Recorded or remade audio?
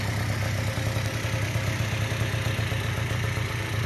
recorded